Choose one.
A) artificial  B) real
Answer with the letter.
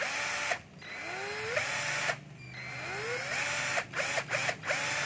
B